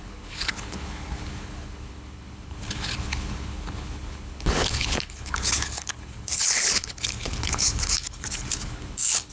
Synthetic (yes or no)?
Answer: yes